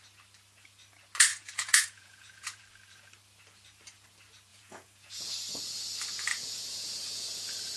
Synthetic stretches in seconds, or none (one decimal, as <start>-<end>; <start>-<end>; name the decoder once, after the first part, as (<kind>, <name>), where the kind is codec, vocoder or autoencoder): 1.3-2.6 (vocoder, Vocos); 4.5-5.3; 6.3-7.8

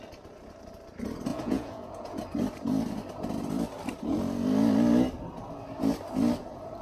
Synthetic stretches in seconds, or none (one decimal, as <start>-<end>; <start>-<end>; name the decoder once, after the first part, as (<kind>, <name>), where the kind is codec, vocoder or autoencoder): 1.3-2.2 (vocoder, Vocos)

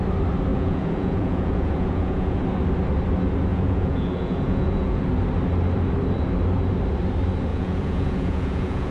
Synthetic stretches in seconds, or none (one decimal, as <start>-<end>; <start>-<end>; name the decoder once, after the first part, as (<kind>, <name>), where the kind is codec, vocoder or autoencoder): 0.5-2.4 (vocoder, Vocos); 3.5-5.0; 7.5-8.9

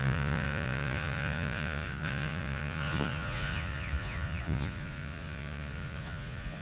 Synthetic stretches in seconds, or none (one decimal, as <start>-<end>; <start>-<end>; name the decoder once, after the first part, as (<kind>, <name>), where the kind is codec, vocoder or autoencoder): 0.0-6.6 (vocoder, Vocos)

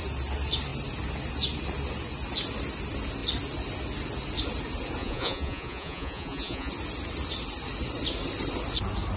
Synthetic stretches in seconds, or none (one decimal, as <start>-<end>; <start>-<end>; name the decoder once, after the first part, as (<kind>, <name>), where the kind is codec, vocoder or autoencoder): 5.0-6.7 (vocoder, Vocos)

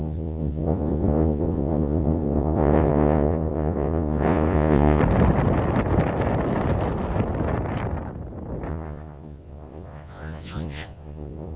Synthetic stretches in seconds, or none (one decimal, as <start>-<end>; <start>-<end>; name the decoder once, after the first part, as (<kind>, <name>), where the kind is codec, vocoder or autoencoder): 0.0-5.0 (vocoder, Vocos); 8.7-11.6

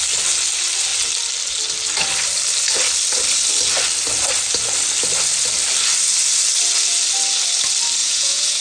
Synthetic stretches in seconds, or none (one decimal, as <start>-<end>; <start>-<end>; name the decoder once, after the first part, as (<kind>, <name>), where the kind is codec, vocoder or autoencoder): 8.0-8.6 (vocoder, Vocos)